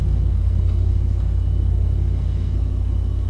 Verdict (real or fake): fake